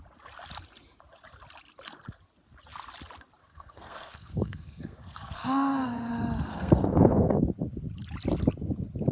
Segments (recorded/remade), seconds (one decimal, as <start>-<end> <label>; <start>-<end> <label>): 0.0-3.4 recorded; 3.4-6.1 remade; 6.1-6.5 recorded; 6.5-7.4 remade; 7.4-9.1 recorded